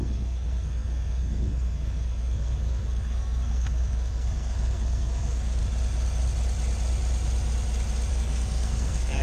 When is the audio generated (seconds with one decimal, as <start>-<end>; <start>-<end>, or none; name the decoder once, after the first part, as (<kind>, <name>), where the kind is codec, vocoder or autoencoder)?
0.0-5.6 (codec, SNAC); 8.1-9.2